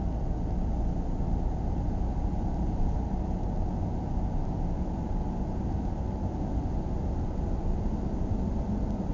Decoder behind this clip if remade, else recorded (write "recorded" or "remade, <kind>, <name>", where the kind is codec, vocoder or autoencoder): recorded